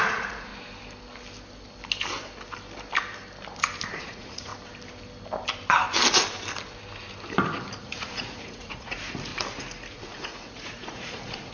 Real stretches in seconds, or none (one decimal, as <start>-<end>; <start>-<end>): 0.5-4.0; 4.5-7.8; 9.3-9.9